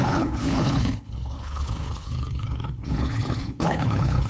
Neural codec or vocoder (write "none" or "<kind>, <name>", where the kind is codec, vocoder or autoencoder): codec, HILCodec